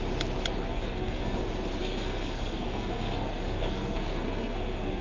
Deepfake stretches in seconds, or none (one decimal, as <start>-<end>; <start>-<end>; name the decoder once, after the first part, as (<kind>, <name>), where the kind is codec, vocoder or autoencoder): 0.6-1.4 (codec, SNAC); 1.8-5.0